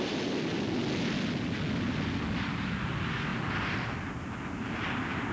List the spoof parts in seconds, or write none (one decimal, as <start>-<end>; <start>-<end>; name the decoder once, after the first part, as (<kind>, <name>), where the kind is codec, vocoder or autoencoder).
none